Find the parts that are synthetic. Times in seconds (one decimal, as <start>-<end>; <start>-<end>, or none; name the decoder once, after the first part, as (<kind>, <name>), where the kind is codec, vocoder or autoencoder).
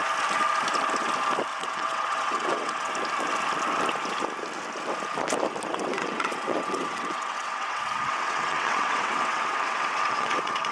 1.5-2.9 (vocoder, WaveNeXt); 5.7-10.7